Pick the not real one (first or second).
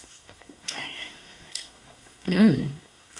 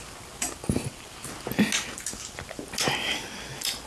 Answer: first